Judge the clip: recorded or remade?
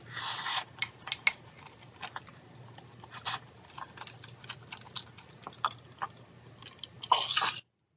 recorded